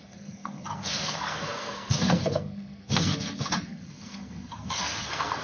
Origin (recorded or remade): remade